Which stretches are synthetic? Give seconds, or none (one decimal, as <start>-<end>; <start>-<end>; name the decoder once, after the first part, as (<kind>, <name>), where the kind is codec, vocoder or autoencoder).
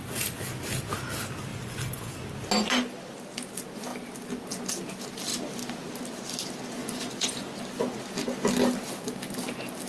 1.5-2.1 (vocoder, Vocos); 6.8-7.5